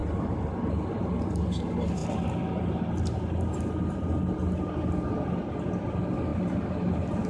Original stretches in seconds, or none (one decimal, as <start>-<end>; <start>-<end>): 0.0-7.3